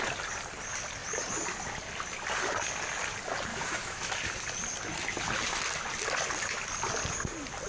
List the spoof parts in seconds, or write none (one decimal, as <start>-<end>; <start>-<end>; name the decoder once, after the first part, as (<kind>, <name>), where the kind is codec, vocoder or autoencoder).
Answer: 3.5-4.1 (autoencoder, DAC-VAE)